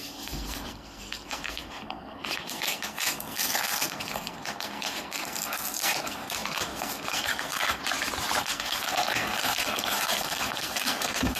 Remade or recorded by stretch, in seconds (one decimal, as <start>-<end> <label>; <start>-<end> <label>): 0.0-7.8 remade; 7.8-8.4 recorded; 8.4-11.4 remade